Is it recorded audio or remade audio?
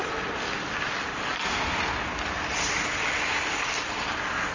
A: recorded